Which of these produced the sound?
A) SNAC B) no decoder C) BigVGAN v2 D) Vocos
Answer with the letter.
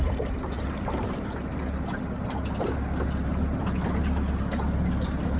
B